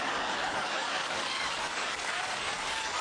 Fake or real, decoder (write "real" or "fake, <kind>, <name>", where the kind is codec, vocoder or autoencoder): fake, codec, DAC